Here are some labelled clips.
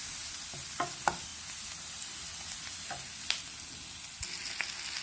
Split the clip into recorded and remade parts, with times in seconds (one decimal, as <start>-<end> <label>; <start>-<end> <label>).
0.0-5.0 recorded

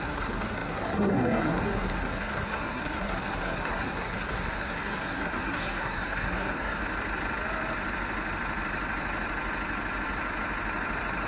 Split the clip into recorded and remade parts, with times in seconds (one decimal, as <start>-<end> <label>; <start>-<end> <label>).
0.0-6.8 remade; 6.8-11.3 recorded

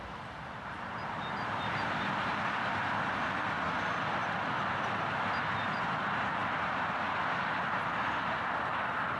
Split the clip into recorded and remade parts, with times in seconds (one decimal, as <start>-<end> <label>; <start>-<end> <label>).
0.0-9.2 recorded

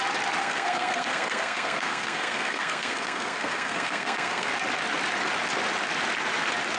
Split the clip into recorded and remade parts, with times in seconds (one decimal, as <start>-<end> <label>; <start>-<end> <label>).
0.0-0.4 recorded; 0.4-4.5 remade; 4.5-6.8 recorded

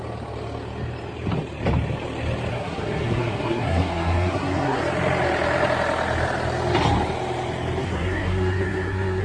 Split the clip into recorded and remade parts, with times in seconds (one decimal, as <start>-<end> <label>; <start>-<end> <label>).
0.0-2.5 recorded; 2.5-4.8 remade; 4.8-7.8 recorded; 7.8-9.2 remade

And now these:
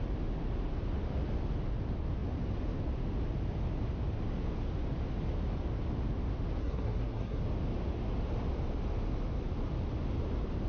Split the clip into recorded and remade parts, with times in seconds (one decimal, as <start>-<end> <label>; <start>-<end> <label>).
0.0-6.6 recorded; 6.6-7.4 remade; 7.4-10.7 recorded